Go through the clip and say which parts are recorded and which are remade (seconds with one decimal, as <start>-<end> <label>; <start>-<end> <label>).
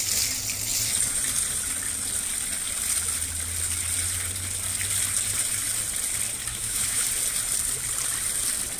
0.0-6.5 recorded; 6.5-7.0 remade; 7.0-8.8 recorded